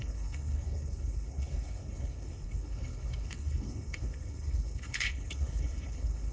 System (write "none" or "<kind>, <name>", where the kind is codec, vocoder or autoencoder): codec, HILCodec